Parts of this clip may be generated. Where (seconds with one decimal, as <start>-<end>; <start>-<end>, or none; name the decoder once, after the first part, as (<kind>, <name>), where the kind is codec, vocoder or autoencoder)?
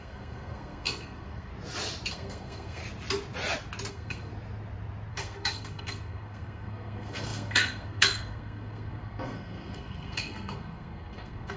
0.0-1.5 (codec, SNAC); 2.1-2.8; 3.9-4.3; 5.1-11.6